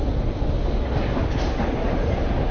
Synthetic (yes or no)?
no